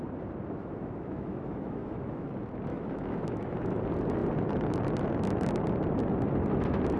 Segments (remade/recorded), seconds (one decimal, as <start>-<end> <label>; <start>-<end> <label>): 0.0-0.6 recorded; 0.6-2.3 remade; 2.3-2.7 recorded; 2.7-3.8 remade; 3.8-7.0 recorded